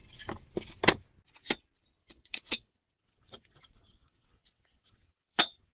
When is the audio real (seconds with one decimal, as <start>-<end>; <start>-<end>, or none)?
0.0-2.0